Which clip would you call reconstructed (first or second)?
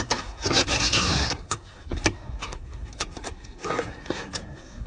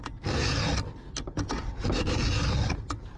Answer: first